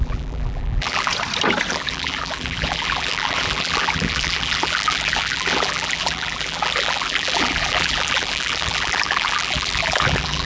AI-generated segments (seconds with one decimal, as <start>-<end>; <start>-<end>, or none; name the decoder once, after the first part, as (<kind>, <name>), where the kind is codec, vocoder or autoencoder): 0.0-1.1 (vocoder, BigVGAN v2); 1.7-10.4